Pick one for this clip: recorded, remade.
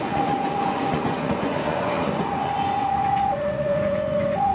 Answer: remade